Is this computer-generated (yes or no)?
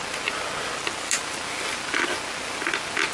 no